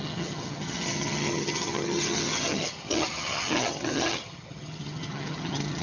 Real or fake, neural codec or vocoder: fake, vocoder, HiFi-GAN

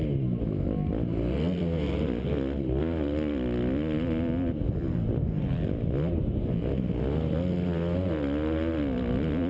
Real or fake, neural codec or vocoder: real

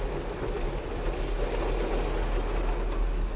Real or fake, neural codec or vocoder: real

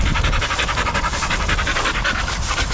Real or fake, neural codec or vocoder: real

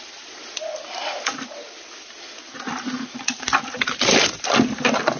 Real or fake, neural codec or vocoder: real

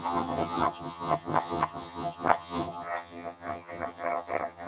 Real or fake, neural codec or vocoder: fake, vocoder, HiFi-GAN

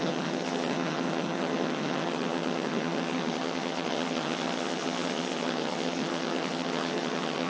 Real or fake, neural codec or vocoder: fake, vocoder, HiFi-GAN